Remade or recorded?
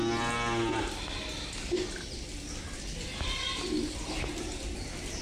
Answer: recorded